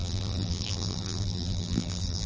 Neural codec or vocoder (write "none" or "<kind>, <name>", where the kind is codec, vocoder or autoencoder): vocoder, BigVGAN v2